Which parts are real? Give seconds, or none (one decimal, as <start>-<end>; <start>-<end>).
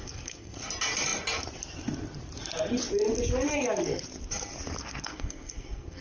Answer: 0.6-4.8